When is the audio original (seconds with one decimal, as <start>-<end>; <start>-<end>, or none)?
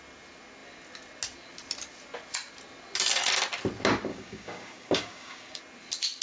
0.0-4.1; 5.6-6.2